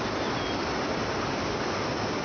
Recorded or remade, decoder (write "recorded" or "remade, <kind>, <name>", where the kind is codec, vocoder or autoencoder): recorded